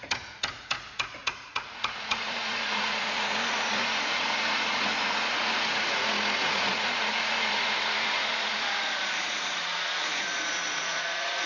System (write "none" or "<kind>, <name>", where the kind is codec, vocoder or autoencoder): vocoder, Vocos